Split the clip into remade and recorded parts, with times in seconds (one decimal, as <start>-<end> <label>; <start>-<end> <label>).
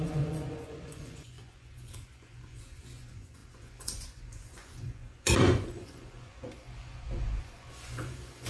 0.0-8.5 remade